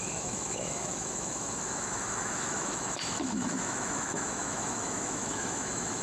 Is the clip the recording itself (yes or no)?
no